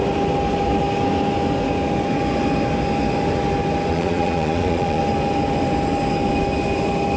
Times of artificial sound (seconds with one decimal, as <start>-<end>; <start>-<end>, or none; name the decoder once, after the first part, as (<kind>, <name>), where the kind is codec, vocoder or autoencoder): 3.9-5.0 (vocoder, Vocos)